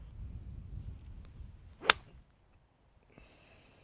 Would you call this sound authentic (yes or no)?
yes